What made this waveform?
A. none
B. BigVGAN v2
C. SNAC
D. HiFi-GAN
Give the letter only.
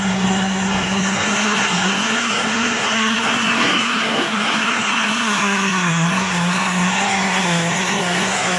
C